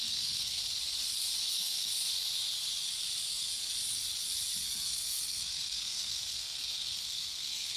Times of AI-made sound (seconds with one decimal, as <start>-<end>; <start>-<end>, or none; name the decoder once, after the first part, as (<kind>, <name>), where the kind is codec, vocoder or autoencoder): 0.0-0.6 (codec, SNAC); 1.4-1.9; 3.3-3.7; 4.6-7.8